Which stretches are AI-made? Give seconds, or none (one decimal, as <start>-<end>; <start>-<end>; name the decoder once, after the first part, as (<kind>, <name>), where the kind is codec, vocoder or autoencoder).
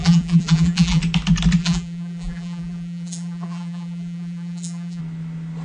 0.0-1.0 (vocoder, BigVGAN v2); 1.6-5.0